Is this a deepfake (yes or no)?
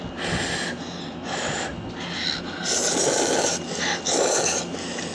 no